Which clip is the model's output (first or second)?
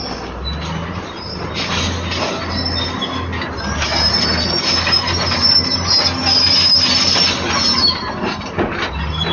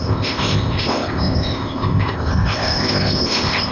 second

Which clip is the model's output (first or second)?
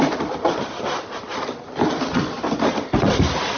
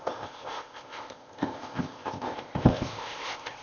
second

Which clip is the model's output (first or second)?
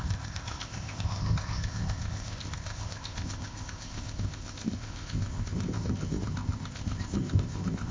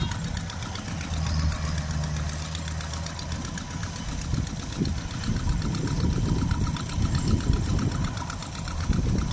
first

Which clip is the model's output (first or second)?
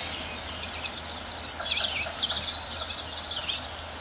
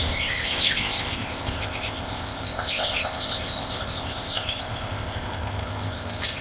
second